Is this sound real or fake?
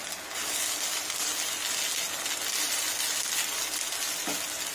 real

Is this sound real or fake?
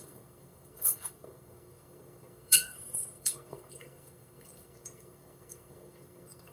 fake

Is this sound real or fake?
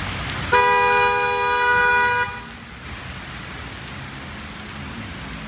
real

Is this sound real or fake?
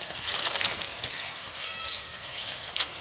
fake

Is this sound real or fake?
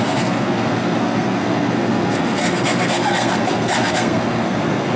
fake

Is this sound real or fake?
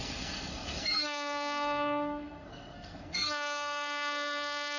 fake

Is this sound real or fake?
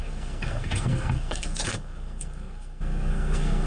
fake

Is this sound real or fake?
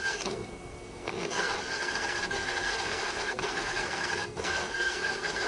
fake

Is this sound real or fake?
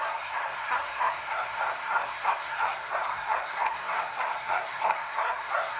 fake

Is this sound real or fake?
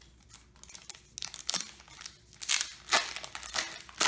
real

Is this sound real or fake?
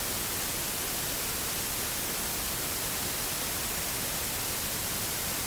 real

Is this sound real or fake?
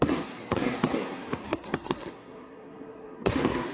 fake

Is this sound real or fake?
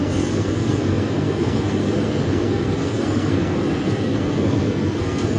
fake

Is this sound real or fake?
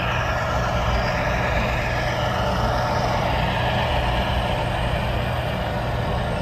real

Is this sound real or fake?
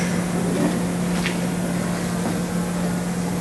real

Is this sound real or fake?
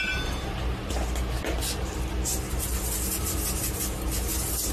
real